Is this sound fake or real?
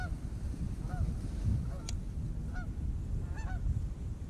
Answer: real